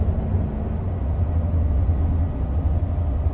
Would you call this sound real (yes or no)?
yes